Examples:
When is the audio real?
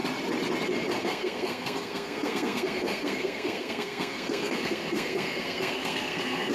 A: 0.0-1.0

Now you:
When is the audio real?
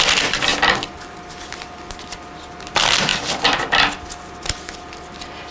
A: 0.0-5.5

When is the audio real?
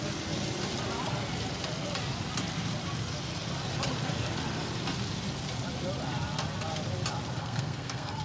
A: 0.0-7.4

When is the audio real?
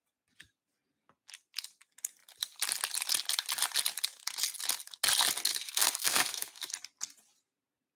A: 0.0-5.5; 6.7-8.0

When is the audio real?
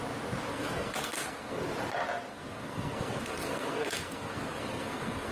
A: 0.0-0.5; 1.6-2.3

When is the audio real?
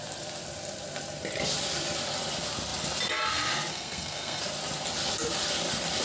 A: 0.0-3.7; 4.4-6.0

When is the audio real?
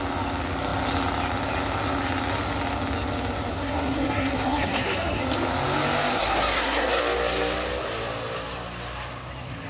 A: 0.0-3.5; 5.2-6.1; 7.0-9.7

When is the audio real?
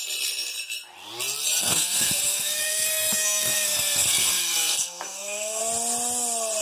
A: 0.0-1.6; 5.6-6.6